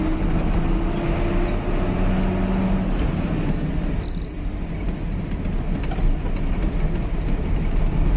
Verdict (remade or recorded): recorded